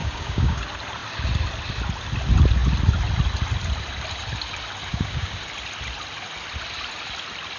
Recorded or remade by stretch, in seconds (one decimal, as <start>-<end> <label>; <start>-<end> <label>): 0.0-0.6 remade; 0.6-4.9 recorded; 4.9-5.4 remade; 5.4-7.6 recorded